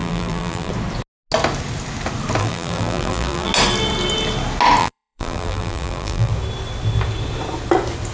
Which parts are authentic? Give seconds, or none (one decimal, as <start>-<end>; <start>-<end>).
0.7-2.4; 3.5-4.8; 6.3-8.1